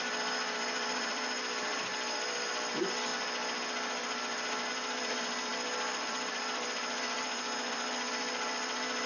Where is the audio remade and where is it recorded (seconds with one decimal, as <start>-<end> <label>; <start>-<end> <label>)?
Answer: 0.0-3.1 remade; 3.1-4.7 recorded; 4.7-5.5 remade; 5.5-6.0 recorded; 6.0-9.1 remade